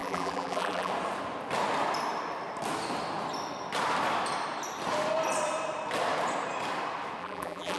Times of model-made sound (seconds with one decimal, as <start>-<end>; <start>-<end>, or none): 0.0-0.9; 7.2-7.8